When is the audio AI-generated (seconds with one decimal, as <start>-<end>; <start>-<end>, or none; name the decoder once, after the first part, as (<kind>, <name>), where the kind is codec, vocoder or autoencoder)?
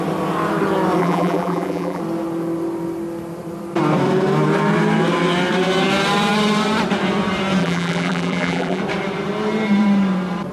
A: 1.0-2.0 (vocoder, BigVGAN v2); 7.6-8.8